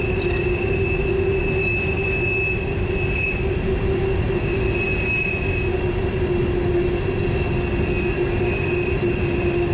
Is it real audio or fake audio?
real